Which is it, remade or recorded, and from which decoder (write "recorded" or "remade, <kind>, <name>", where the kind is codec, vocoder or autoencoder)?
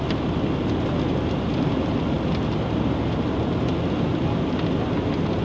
recorded